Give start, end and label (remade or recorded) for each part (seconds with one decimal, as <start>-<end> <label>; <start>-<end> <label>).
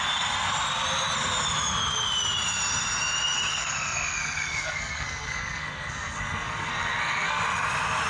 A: 0.0-3.5 recorded; 3.5-7.4 remade; 7.4-8.1 recorded